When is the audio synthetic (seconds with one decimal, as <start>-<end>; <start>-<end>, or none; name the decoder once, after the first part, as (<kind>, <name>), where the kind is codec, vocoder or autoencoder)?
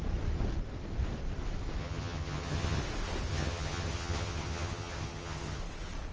1.8-2.8 (vocoder, HiFi-GAN); 3.3-5.6